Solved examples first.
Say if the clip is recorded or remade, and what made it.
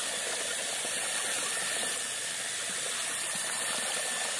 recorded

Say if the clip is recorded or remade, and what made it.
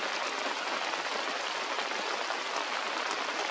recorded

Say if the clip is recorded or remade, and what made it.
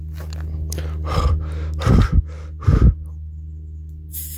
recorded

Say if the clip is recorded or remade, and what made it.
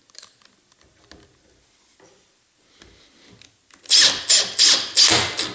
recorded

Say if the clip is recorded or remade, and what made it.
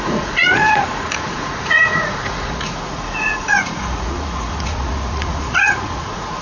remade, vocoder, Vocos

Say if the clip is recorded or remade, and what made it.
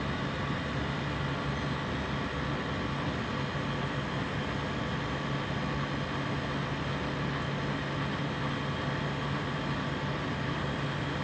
recorded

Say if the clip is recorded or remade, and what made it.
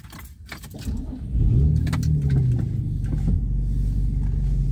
recorded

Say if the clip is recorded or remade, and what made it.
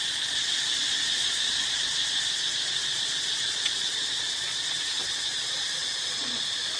remade, vocoder, Vocos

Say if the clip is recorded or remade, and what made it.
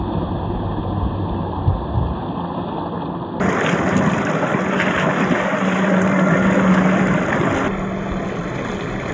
recorded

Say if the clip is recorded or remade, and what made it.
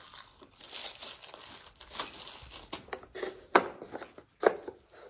recorded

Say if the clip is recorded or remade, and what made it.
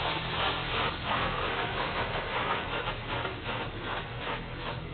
remade, codec, SNAC